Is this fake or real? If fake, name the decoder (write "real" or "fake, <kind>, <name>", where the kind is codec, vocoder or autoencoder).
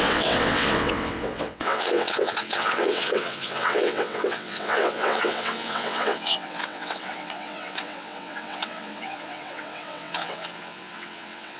fake, vocoder, WaveNeXt